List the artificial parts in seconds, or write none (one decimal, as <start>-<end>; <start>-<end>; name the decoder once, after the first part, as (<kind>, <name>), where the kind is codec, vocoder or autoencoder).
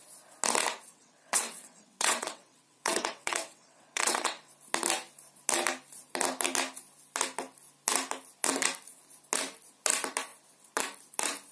0.9-4.5 (vocoder, WaveNeXt)